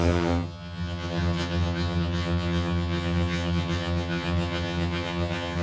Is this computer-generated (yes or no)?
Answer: yes